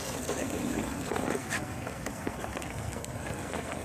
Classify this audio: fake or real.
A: fake